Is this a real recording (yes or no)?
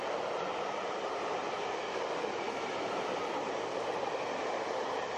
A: yes